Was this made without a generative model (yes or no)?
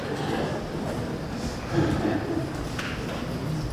yes